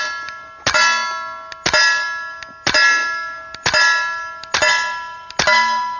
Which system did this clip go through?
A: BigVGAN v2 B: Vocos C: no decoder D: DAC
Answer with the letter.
C